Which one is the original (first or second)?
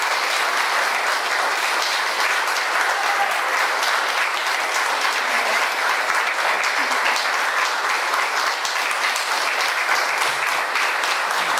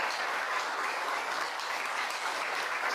first